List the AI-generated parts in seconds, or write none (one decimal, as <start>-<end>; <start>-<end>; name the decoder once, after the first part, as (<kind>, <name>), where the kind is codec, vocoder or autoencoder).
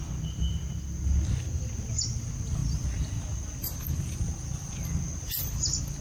4.0-4.7 (vocoder, BigVGAN v2)